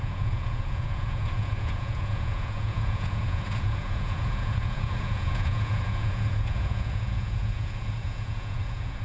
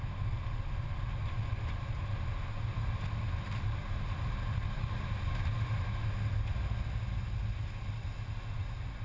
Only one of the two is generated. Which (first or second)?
first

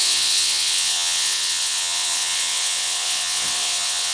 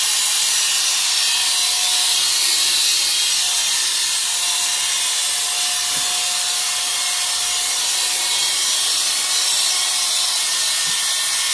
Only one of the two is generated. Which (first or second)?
first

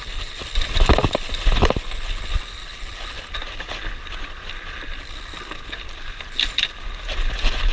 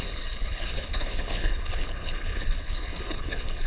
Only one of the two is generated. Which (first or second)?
second